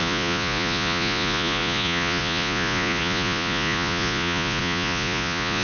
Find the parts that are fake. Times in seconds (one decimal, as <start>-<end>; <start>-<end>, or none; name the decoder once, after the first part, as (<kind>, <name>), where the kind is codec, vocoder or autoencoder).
0.0-5.6 (vocoder, Vocos)